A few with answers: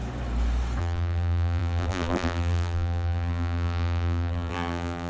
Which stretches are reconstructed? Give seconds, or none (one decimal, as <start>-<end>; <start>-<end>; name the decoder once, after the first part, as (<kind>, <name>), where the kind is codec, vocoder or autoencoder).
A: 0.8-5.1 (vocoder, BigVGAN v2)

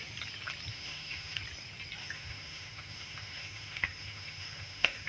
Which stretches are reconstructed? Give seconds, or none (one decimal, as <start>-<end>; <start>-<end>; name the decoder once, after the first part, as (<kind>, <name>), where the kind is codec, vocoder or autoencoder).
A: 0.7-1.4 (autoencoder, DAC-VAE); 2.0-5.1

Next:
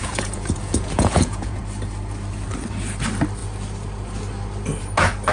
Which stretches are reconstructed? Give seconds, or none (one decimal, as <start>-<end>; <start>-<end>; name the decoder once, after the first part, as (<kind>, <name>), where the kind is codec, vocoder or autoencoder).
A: 0.0-1.6 (vocoder, Vocos)

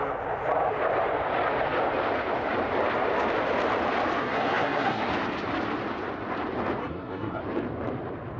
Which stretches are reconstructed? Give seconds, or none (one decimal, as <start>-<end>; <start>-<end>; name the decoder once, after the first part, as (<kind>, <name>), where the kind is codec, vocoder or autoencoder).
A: 4.2-5.1 (codec, SNAC); 6.8-7.4

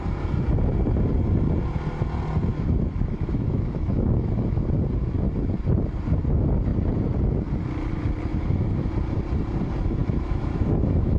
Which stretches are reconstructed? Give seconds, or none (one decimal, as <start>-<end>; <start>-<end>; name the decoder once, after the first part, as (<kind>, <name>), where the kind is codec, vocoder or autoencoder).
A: 2.5-4.6 (autoencoder, DAC-VAE); 8.3-8.9; 10.0-11.2

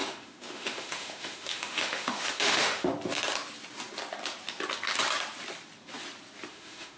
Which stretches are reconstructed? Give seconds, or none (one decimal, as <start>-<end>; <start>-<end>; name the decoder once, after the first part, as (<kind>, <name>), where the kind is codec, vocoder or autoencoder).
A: 0.0-2.9 (autoencoder, DAC-VAE); 6.5-7.0